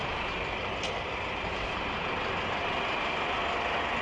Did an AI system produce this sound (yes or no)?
no